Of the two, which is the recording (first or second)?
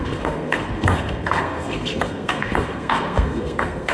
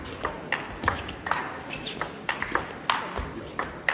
second